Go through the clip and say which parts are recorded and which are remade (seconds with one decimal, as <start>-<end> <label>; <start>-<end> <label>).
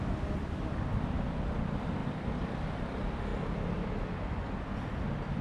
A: 0.0-3.3 remade; 3.3-5.4 recorded